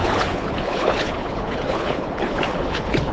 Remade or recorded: remade